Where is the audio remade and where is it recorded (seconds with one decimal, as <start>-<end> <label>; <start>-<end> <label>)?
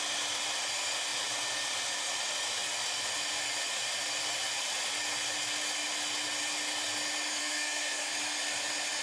0.0-7.4 recorded; 7.4-8.1 remade; 8.1-9.0 recorded